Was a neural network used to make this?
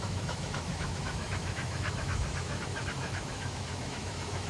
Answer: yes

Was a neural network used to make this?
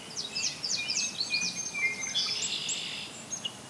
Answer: no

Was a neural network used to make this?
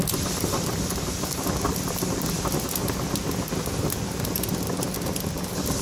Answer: no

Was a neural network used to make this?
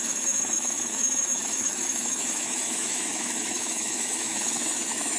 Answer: yes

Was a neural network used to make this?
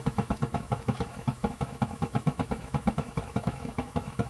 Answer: yes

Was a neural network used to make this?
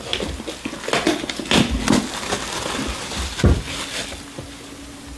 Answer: no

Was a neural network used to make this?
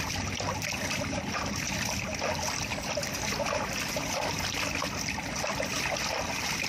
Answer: no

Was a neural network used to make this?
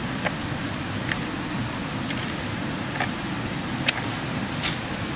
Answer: no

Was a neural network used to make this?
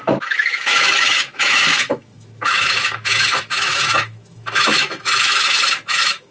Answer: yes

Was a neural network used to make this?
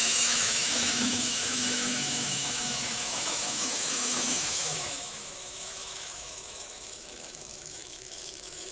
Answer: yes